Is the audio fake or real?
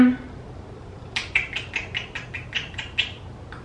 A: real